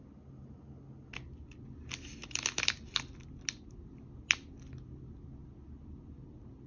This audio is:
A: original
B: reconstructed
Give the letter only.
A